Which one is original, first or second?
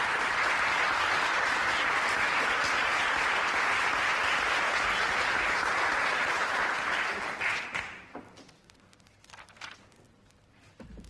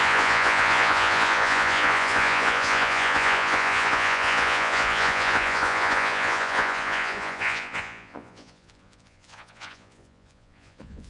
first